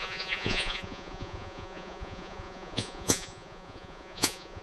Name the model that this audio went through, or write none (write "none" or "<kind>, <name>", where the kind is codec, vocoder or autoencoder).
vocoder, Vocos